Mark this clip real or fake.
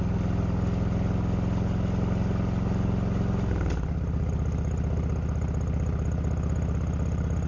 real